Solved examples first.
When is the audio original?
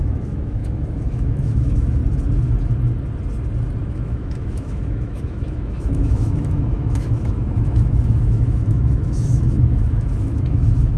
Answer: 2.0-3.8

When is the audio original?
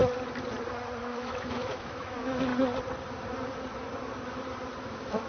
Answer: 0.0-1.0; 2.5-4.8